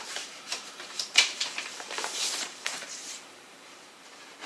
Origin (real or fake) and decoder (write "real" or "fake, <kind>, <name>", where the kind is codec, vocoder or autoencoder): fake, vocoder, BigVGAN v2